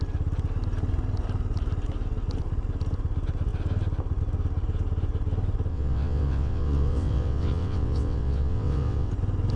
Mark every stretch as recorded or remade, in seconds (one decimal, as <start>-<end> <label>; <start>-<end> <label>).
0.0-5.7 recorded; 5.7-9.1 remade; 9.1-9.6 recorded